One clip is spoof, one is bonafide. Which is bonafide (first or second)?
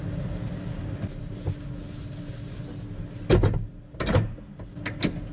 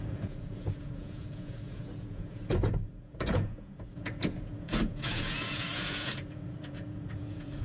first